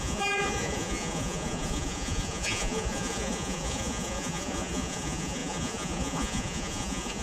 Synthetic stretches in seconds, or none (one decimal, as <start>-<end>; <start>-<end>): 0.0-7.2